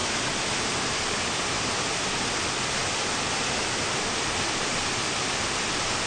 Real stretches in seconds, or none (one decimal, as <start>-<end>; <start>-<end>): 0.0-6.1